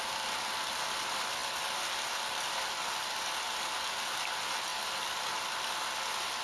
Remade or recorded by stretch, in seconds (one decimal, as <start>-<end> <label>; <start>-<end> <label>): 0.0-6.4 recorded